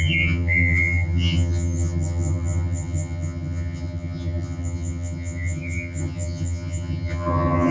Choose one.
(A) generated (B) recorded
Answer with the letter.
A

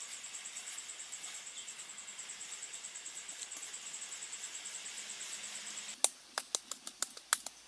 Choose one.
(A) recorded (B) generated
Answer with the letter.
A